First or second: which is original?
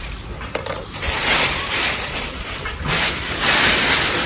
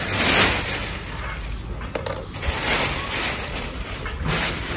second